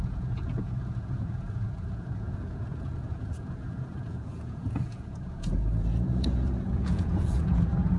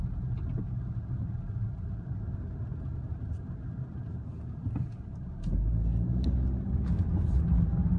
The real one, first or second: second